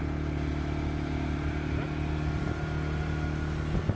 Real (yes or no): yes